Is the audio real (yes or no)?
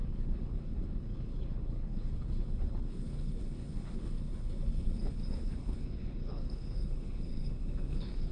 no